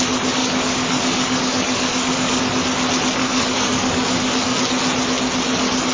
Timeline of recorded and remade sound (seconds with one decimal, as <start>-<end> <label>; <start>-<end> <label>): 0.0-0.4 recorded; 0.4-2.4 remade; 2.4-3.2 recorded; 3.2-4.6 remade; 4.6-5.9 recorded